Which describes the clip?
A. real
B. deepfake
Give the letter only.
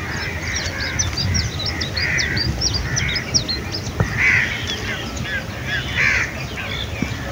A